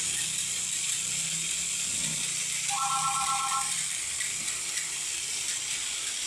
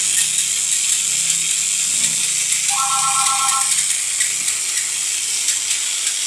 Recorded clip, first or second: second